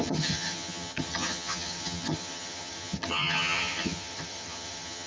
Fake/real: fake